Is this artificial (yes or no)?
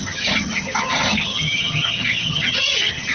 yes